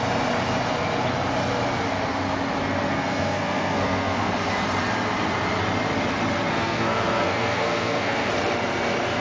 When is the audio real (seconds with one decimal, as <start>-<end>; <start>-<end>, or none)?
0.0-2.9; 4.3-6.5; 8.3-9.2